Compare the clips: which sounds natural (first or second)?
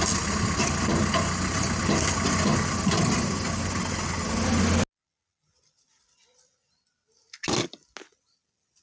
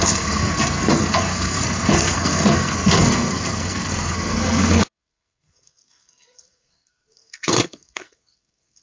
first